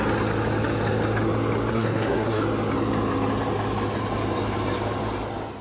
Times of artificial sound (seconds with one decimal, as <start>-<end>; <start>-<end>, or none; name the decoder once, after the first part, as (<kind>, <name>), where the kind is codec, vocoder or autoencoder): 1.7-2.4 (codec, SNAC)